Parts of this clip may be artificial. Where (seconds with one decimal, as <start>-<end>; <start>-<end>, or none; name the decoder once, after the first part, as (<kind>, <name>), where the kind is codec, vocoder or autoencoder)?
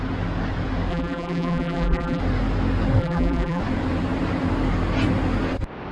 0.9-2.2 (vocoder, BigVGAN v2); 3.0-3.6